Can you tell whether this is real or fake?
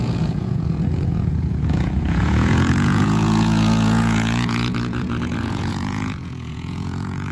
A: fake